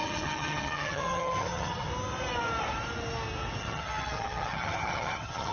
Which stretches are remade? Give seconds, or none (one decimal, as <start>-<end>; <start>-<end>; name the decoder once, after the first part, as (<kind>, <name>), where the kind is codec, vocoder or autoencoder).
0.0-1.9 (vocoder, HiFi-GAN); 3.6-5.5